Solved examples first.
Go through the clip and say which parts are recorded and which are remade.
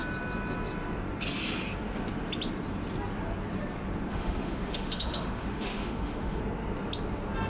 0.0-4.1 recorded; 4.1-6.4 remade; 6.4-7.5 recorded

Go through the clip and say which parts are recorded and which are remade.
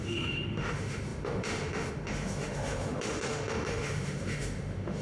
0.0-5.0 remade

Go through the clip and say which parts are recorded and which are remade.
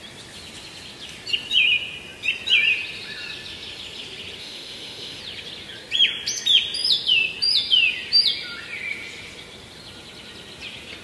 0.0-4.4 recorded; 4.4-5.2 remade; 5.2-11.0 recorded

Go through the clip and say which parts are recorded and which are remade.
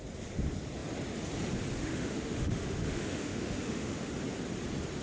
0.0-1.8 recorded; 1.8-4.1 remade; 4.1-5.0 recorded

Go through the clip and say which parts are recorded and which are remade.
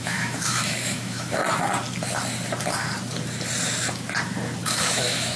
0.0-1.4 remade; 1.4-4.6 recorded; 4.6-5.4 remade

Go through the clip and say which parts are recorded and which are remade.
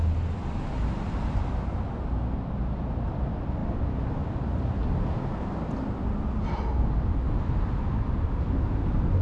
0.0-9.2 recorded